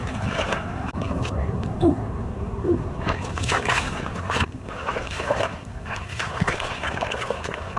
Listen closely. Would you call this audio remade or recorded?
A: remade